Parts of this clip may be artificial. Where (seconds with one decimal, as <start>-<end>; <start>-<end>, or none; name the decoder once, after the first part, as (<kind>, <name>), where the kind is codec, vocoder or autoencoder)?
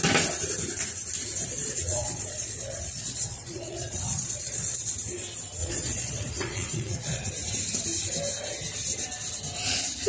1.4-4.9 (vocoder, Vocos); 5.6-7.3